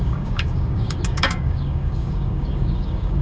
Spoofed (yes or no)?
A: yes